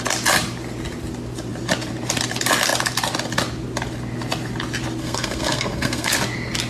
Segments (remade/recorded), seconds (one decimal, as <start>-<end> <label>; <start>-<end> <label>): 0.0-5.0 recorded; 5.0-6.1 remade; 6.1-6.7 recorded